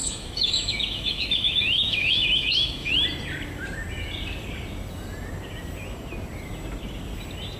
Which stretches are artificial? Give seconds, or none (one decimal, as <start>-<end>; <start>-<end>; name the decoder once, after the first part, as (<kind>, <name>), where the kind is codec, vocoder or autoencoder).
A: 0.0-2.9 (autoencoder, DAC-VAE)